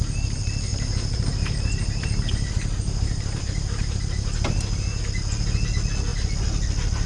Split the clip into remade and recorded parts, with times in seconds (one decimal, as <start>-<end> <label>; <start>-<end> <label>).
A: 0.0-0.7 recorded; 0.7-5.0 remade; 5.0-7.1 recorded